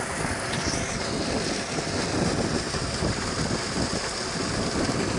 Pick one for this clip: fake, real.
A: real